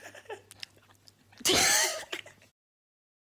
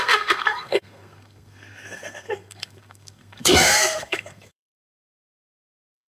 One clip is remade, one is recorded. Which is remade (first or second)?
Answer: second